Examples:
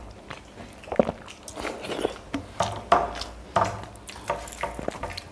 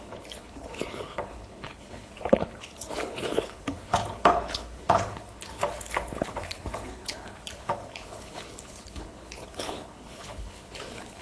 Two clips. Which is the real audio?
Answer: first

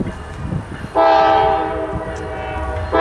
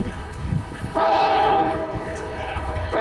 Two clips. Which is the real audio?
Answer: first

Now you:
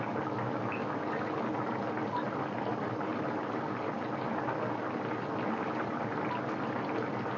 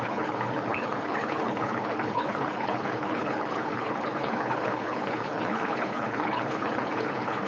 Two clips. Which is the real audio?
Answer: first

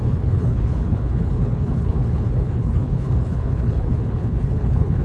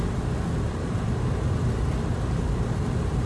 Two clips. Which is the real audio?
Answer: second